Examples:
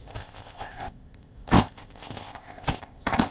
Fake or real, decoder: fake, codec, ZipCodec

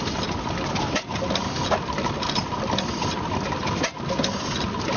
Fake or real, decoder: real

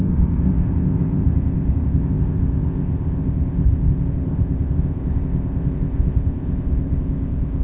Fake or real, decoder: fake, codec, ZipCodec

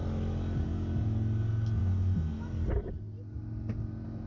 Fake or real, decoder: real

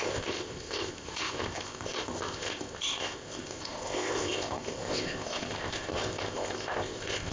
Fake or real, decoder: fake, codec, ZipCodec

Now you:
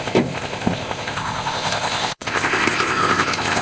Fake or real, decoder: fake, codec, ZipCodec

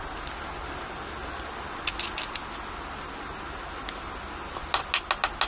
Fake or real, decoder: real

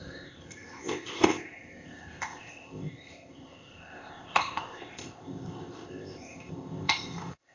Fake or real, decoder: fake, codec, ZipCodec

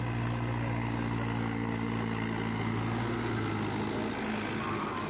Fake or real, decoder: real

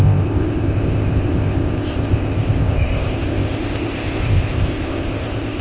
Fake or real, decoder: fake, codec, ZipCodec